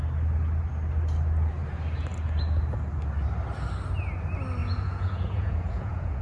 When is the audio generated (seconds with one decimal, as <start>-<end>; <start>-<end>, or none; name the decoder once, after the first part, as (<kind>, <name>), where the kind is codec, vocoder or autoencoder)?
4.6-6.2 (vocoder, Vocos)